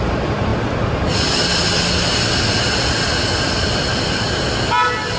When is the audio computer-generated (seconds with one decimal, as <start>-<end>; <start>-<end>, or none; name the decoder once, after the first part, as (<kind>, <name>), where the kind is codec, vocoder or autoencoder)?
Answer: none